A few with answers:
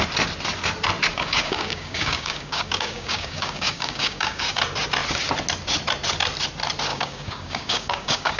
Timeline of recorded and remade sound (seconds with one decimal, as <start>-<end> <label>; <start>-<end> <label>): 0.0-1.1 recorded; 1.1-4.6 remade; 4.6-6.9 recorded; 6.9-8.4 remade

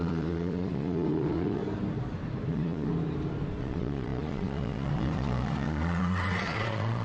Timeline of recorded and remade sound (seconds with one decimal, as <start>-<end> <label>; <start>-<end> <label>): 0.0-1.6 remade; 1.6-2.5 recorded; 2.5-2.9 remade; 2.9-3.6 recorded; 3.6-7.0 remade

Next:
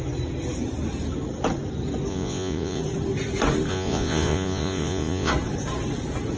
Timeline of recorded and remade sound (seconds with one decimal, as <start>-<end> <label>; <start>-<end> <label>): 0.0-2.1 recorded; 2.1-2.8 remade; 2.8-3.7 recorded; 3.7-5.3 remade; 5.3-6.4 recorded